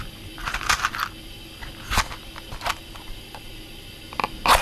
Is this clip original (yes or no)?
yes